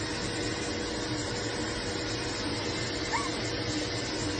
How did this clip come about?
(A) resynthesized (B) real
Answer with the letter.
B